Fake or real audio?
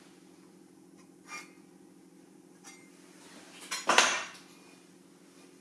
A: real